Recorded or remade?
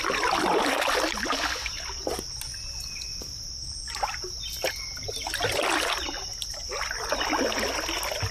recorded